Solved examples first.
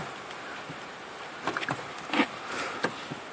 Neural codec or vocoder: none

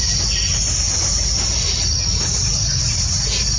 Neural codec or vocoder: vocoder, BigVGAN v2